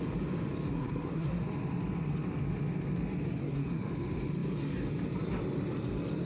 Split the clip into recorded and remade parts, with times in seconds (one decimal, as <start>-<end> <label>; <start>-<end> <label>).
0.0-0.7 recorded; 0.7-1.4 remade; 1.4-3.4 recorded; 3.4-3.9 remade; 3.9-6.3 recorded

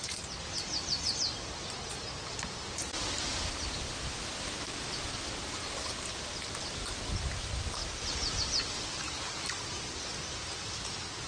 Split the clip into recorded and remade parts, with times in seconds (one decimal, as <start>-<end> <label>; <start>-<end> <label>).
0.0-7.8 recorded; 7.8-8.4 remade; 8.4-11.3 recorded